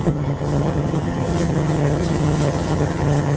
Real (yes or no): no